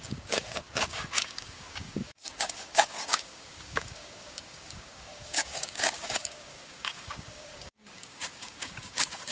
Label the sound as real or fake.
fake